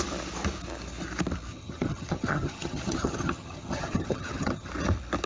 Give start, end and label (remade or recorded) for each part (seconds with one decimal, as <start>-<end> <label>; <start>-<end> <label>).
0.0-1.5 recorded; 1.5-4.7 remade; 4.7-5.3 recorded